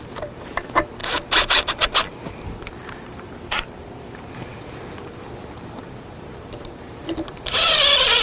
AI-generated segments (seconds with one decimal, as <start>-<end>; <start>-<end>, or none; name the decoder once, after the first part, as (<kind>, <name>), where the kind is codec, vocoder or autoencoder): 0.0-8.2 (vocoder, BigVGAN v2)